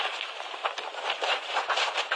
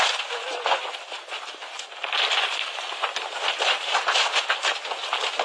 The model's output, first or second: first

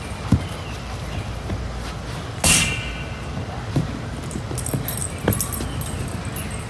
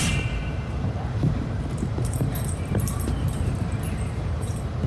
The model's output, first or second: second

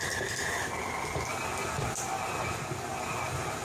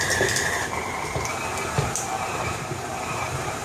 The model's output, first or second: second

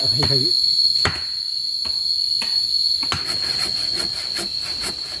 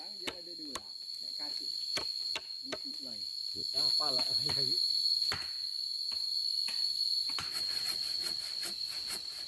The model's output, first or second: second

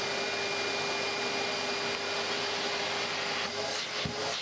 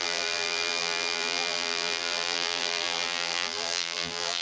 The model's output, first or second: second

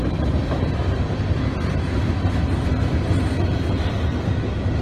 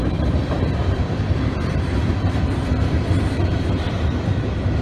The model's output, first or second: second